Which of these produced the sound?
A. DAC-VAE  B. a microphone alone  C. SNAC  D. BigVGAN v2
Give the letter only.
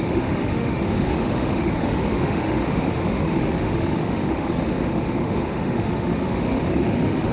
A